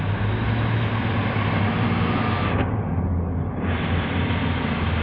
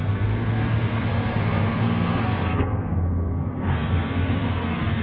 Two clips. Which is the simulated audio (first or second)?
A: second